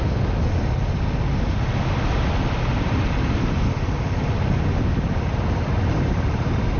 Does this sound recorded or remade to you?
recorded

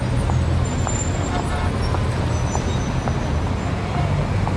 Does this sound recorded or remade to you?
recorded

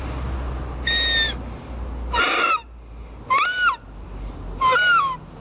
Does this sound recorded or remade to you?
recorded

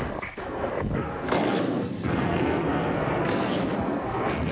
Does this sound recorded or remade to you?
remade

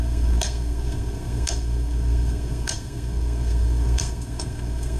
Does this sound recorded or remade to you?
remade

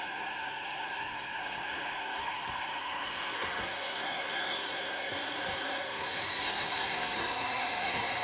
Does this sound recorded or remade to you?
remade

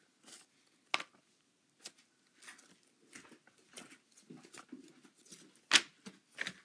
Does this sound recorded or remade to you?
recorded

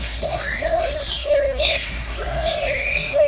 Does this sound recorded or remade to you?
remade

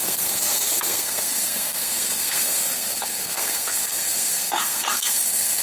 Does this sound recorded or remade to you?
remade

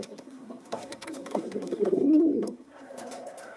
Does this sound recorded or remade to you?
remade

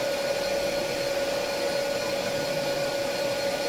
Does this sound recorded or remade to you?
recorded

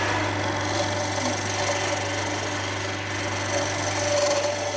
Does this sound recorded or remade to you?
recorded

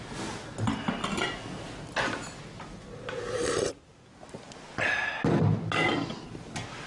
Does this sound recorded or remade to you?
recorded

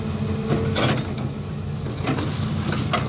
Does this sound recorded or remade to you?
recorded